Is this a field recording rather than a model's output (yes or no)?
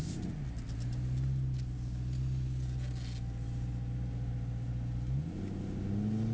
yes